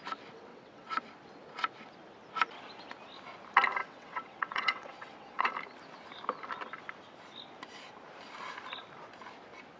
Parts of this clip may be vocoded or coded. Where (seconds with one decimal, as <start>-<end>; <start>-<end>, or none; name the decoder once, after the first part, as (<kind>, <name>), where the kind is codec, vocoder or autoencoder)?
0.5-1.0 (vocoder, WaveNeXt); 3.8-5.5